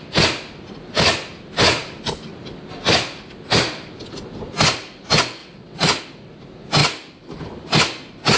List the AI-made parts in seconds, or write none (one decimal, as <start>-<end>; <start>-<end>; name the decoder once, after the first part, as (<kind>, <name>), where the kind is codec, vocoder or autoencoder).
5.4-6.0 (vocoder, WaveNeXt)